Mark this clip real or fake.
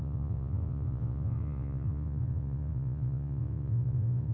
fake